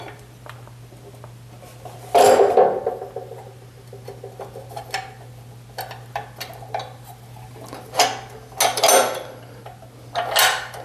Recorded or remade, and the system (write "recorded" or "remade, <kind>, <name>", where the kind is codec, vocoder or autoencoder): recorded